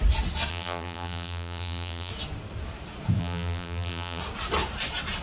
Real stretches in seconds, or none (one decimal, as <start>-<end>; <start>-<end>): 0.0-0.5; 2.1-3.2; 4.2-5.2